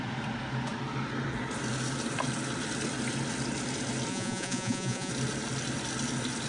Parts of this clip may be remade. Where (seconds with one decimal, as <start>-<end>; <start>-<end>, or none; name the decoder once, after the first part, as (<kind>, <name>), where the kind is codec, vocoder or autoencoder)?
4.1-5.1 (vocoder, Vocos)